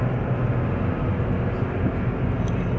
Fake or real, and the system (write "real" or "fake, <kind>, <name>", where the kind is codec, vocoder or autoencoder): real